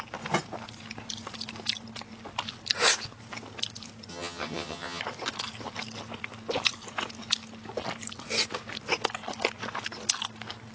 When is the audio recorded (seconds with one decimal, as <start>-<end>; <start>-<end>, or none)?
0.0-4.1; 5.0-10.7

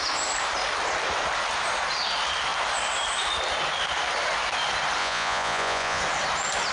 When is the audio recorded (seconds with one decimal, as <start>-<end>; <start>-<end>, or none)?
0.0-5.0; 6.0-6.7

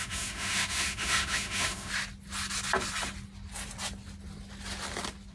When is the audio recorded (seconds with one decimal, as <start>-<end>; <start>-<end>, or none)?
1.9-5.3